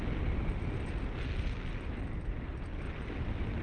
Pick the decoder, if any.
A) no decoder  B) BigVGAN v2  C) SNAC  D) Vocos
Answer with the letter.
A